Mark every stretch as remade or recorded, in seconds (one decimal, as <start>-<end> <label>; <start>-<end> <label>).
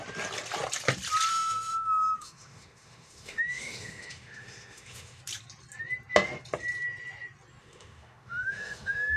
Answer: 0.0-1.3 recorded; 1.3-5.2 remade; 5.2-7.6 recorded; 7.6-9.2 remade